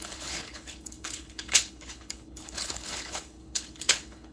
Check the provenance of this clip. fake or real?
fake